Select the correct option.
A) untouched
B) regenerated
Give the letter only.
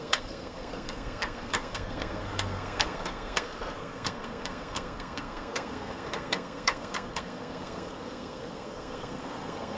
B